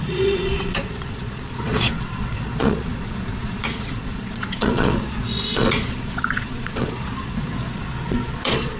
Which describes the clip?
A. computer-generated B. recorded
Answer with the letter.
A